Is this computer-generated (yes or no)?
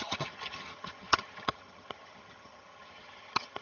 yes